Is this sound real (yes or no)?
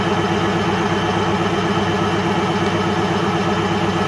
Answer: yes